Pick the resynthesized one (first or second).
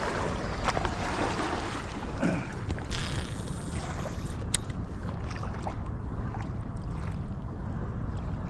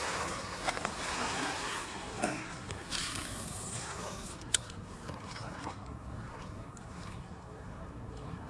second